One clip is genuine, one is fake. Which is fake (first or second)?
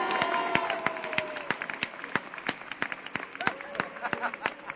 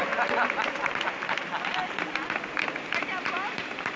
second